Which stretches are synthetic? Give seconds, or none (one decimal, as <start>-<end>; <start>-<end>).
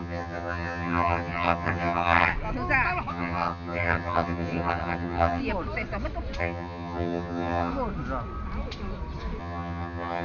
0.0-2.3; 3.1-5.4; 6.4-7.7; 9.4-10.2